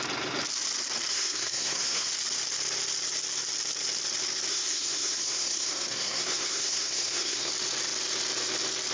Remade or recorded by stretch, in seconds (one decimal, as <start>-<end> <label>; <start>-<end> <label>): 0.0-1.1 recorded; 1.1-2.1 remade; 2.1-4.5 recorded; 4.5-7.5 remade; 7.5-8.9 recorded